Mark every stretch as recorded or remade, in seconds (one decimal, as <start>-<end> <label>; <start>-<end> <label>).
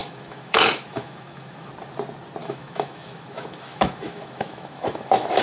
0.0-1.7 remade; 1.7-2.4 recorded; 2.4-5.4 remade